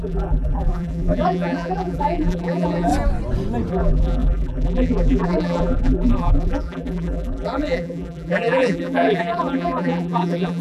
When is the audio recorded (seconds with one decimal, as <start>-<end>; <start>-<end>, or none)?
2.9-3.7